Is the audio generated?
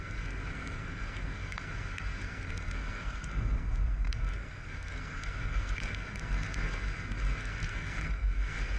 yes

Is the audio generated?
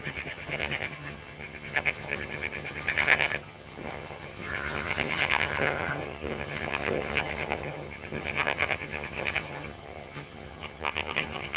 yes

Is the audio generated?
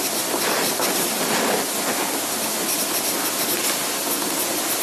no